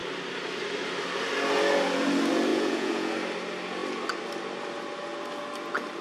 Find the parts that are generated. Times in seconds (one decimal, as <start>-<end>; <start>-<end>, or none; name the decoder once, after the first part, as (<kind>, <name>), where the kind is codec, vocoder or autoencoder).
2.5-3.1 (vocoder, Vocos)